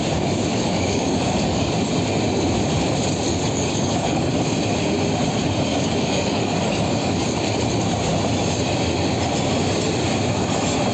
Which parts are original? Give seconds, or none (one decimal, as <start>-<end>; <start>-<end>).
0.0-0.5; 1.7-3.3; 4.3-5.7; 7.7-10.9